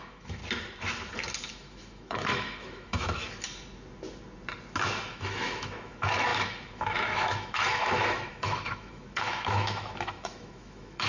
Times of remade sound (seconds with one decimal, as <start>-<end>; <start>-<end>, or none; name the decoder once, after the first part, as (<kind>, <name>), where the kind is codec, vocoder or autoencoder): 0.0-0.4 (autoencoder, DAC-VAE); 1.5-3.2; 5.1-11.1